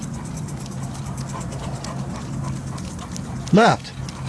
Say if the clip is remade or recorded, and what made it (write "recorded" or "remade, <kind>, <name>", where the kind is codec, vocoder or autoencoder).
recorded